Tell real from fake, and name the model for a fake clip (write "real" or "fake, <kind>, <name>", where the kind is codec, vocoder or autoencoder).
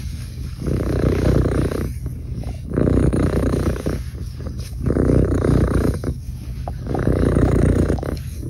fake, codec, DAC